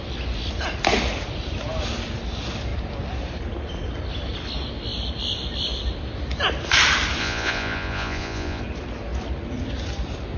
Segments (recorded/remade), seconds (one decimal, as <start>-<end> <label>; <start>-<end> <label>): 0.0-7.2 recorded; 7.2-8.6 remade; 8.6-10.4 recorded